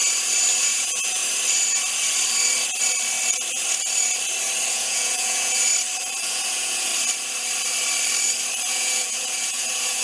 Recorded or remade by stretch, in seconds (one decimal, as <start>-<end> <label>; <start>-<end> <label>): 0.0-0.6 recorded; 0.6-1.2 remade; 1.2-4.7 recorded; 4.7-5.7 remade; 5.7-6.2 recorded; 6.2-6.9 remade; 6.9-8.7 recorded; 8.7-10.0 remade